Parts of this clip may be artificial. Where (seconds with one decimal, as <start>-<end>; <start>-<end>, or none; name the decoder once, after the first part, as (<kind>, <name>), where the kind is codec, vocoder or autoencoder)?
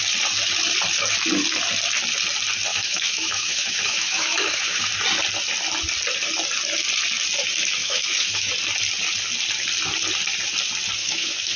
2.7-4.9 (autoencoder, DAC-VAE); 7.8-8.5; 11.0-11.6